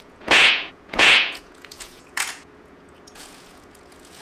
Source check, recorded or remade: remade